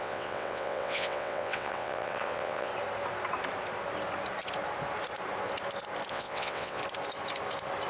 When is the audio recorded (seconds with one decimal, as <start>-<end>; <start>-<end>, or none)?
2.7-6.1; 6.8-7.9